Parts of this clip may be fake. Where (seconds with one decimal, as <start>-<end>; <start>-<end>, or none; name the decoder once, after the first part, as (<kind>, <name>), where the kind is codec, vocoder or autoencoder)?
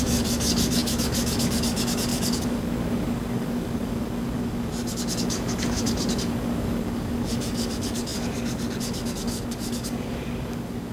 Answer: 0.0-10.9 (codec, DAC)